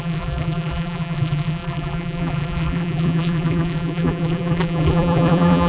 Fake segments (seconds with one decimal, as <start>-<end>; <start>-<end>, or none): 0.0-5.7